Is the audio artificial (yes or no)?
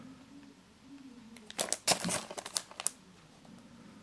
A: no